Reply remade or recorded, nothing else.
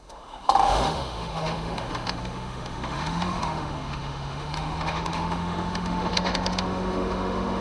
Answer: remade